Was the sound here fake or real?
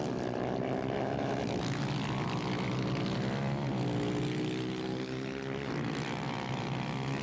real